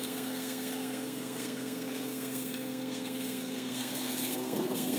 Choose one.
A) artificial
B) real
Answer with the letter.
A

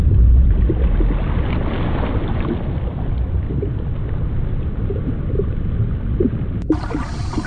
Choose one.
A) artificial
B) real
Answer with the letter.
B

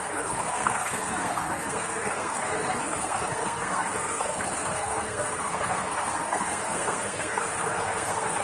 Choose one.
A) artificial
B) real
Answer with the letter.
A